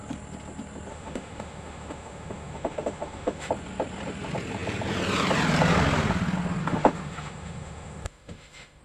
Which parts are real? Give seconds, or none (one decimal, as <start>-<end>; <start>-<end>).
0.0-0.9; 3.5-6.6